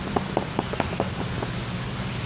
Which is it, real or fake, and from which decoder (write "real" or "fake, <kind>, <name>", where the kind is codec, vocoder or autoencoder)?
real